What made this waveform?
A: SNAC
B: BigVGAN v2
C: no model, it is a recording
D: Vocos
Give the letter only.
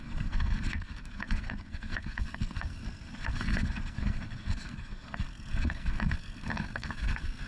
A